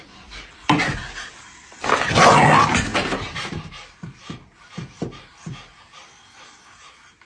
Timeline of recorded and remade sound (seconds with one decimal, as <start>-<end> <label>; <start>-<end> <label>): 0.0-7.3 recorded